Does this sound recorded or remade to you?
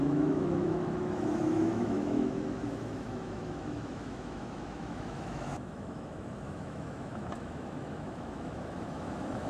remade